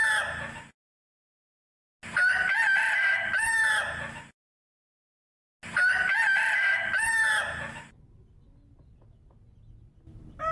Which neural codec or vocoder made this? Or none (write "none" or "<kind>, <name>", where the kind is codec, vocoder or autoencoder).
none